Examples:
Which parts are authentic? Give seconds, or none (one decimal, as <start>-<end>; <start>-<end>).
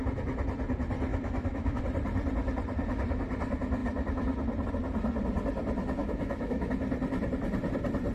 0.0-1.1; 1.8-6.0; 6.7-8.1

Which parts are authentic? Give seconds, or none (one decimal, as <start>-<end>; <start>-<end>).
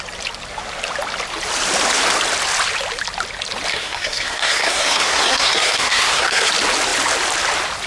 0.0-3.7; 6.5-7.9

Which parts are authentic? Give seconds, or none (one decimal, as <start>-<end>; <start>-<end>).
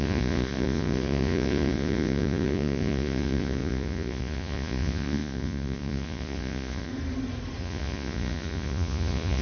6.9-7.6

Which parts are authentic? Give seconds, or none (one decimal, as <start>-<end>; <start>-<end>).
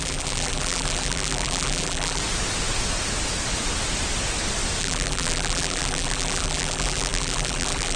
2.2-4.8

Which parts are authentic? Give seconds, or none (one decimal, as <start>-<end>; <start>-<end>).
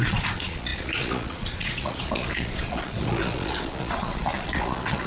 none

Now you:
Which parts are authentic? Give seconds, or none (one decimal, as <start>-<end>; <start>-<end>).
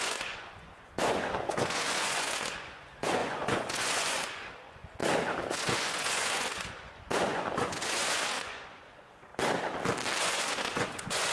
5.0-5.5; 9.3-10.2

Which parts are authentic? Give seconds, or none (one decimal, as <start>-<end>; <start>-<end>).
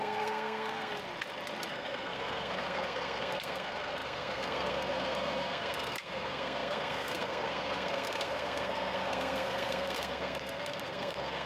0.9-1.7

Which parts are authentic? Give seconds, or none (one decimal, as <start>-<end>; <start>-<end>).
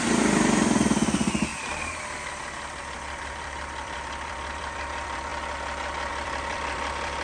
1.5-2.8; 5.3-6.1